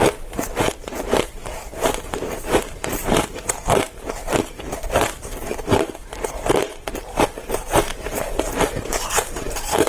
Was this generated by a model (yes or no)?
yes